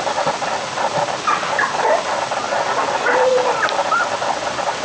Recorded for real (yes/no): yes